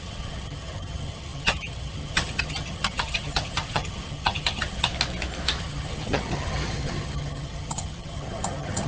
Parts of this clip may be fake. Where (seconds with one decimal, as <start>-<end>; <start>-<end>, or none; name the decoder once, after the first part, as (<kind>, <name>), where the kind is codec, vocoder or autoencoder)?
0.0-4.9 (vocoder, HiFi-GAN); 5.6-8.9